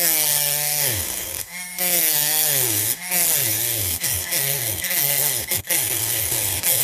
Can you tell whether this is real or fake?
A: fake